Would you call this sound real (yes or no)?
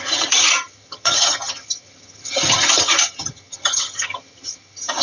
no